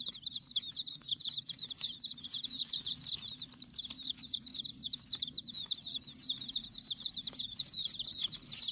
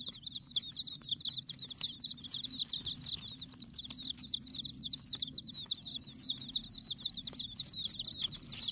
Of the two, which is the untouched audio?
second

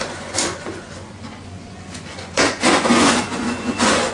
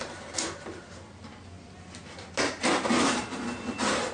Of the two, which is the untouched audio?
second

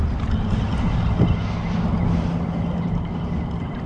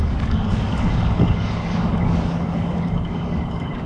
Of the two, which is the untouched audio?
first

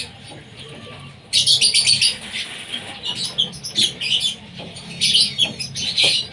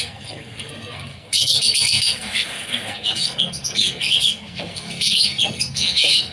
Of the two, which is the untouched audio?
first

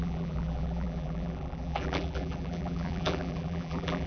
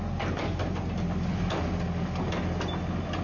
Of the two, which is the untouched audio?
second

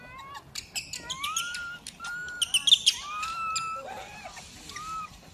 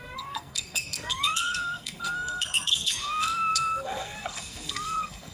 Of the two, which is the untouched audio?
first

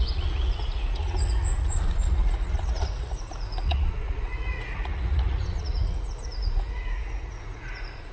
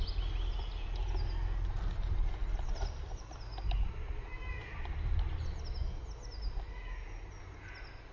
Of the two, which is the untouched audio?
second